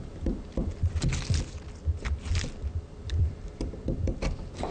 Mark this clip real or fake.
real